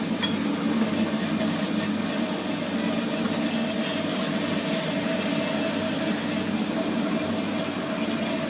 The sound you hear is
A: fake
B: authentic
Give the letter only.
B